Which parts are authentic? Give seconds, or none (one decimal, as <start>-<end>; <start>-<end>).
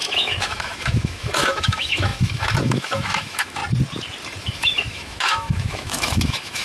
3.6-4.4